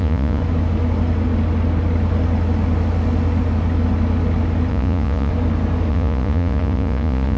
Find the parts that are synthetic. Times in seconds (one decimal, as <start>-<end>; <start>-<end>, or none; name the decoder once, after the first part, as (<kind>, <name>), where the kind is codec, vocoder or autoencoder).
0.0-0.4 (vocoder, Vocos); 4.7-5.3; 5.9-7.4